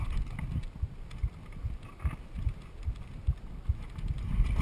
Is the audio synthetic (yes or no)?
no